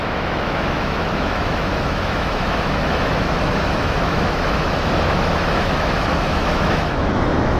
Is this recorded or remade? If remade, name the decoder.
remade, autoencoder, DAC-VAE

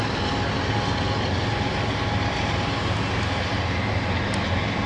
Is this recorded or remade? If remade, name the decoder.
recorded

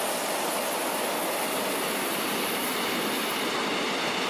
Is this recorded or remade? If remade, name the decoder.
recorded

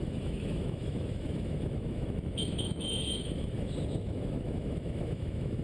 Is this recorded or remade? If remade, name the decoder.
remade, autoencoder, DAC-VAE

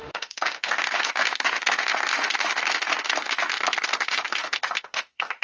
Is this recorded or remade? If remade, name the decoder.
remade, autoencoder, DAC-VAE